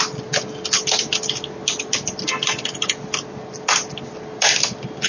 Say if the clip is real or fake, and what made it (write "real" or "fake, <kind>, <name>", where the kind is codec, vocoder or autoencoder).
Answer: real